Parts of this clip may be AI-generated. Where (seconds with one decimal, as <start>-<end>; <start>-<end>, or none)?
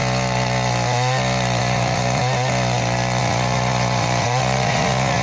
1.6-2.2; 3.2-5.2